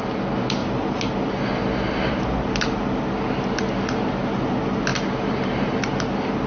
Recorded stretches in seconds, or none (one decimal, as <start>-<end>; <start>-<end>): 0.0-6.5